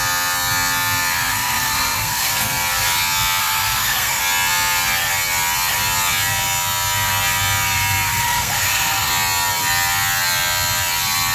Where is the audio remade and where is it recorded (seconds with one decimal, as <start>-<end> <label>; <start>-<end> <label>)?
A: 0.0-1.3 recorded; 1.3-2.3 remade; 2.3-3.4 recorded; 3.4-4.2 remade; 4.2-8.1 recorded; 8.1-9.1 remade; 9.1-11.3 recorded

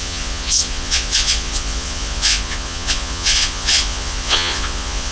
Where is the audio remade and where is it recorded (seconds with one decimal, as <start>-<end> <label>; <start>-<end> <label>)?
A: 0.0-5.1 remade

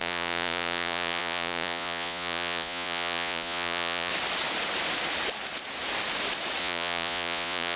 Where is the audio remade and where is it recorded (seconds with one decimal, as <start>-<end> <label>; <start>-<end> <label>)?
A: 0.0-4.1 remade; 4.1-6.6 recorded; 6.6-7.8 remade

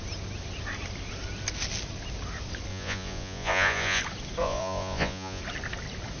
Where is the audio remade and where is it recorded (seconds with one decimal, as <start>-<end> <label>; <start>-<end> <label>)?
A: 0.0-2.7 recorded; 2.7-4.0 remade; 4.0-4.4 recorded; 4.4-5.4 remade; 5.4-6.2 recorded

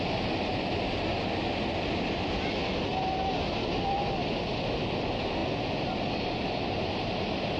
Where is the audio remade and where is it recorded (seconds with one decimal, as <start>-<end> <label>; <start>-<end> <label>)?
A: 0.0-2.9 recorded; 2.9-3.6 remade; 3.6-7.6 recorded